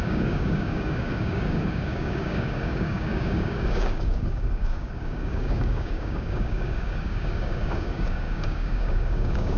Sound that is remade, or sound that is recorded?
remade